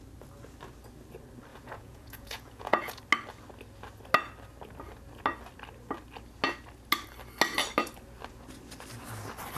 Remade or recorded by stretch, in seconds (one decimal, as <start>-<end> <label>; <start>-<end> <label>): 0.0-1.5 recorded; 1.5-3.0 remade; 3.0-9.6 recorded